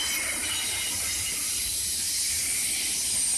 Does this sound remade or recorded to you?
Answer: recorded